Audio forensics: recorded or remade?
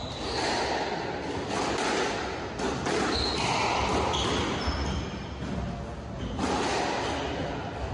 recorded